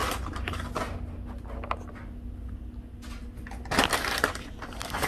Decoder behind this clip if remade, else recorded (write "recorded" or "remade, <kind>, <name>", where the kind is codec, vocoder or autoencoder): recorded